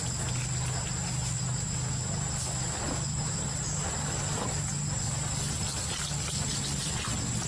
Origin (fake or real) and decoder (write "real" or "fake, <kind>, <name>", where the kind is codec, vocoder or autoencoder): real